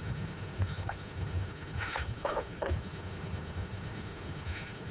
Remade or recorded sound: remade